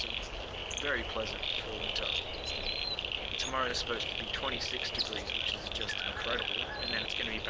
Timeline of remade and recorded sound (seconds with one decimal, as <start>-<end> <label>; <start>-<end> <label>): 0.0-3.7 recorded; 3.7-6.4 remade; 6.4-7.5 recorded